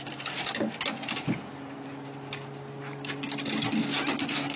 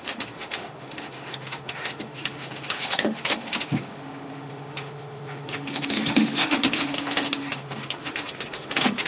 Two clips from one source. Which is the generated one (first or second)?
second